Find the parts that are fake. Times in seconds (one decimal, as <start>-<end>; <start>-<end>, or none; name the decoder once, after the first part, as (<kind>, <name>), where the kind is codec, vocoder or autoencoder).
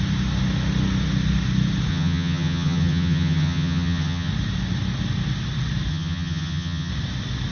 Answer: 1.9-4.3 (vocoder, HiFi-GAN); 5.9-6.9